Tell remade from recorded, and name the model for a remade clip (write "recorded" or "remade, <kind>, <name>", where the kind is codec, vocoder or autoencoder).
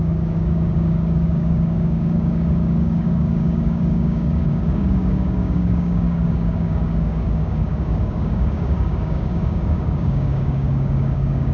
remade, codec, DAC